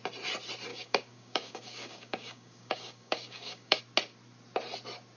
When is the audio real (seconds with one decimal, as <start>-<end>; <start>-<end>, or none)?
0.0-0.7; 3.8-5.2

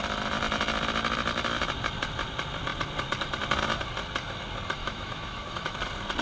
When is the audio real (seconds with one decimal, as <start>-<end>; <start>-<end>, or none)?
0.0-4.8; 5.8-6.2